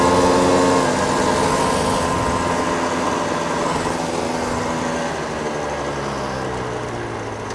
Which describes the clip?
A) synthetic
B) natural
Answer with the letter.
B